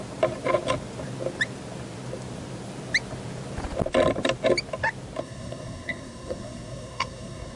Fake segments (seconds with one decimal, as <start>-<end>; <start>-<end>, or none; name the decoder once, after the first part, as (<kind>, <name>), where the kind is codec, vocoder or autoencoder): 5.2-7.6 (codec, SNAC)